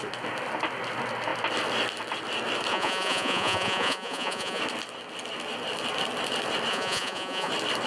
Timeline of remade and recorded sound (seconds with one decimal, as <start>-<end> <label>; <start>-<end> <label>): 0.0-2.7 recorded; 2.7-4.6 remade; 4.6-6.7 recorded; 6.7-7.5 remade; 7.5-7.9 recorded